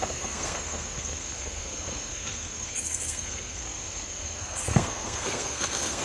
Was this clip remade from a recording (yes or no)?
yes